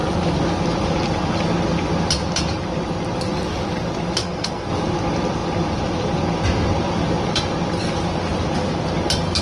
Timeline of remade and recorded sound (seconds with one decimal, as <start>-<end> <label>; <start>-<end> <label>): 0.0-4.2 recorded; 4.2-4.7 remade; 4.7-9.4 recorded